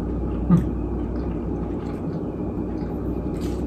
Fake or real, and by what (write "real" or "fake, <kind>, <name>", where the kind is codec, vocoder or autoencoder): fake, vocoder, BigVGAN v2